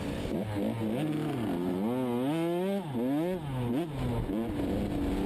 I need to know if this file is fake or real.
real